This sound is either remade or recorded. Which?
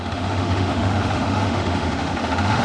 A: remade